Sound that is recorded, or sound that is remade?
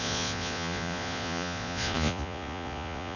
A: remade